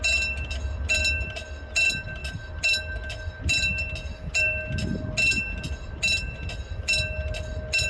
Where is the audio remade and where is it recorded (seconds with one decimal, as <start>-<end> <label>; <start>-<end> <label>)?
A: 0.0-7.9 recorded